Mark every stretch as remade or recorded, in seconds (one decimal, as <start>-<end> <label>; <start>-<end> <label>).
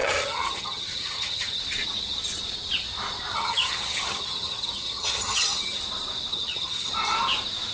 0.0-1.6 remade; 1.6-3.3 recorded; 3.3-5.8 remade; 5.8-6.3 recorded; 6.3-6.9 remade; 6.9-7.7 recorded